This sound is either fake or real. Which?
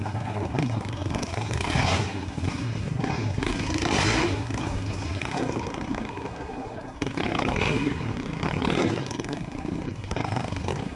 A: fake